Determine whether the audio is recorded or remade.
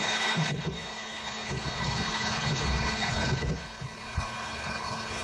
remade